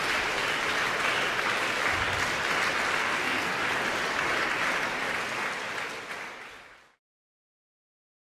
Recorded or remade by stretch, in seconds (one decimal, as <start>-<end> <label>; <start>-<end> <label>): 0.0-3.0 recorded; 3.0-3.6 remade; 3.6-8.4 recorded